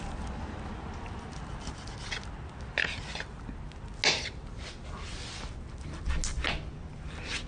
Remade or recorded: recorded